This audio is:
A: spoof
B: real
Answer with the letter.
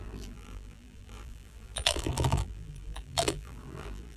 A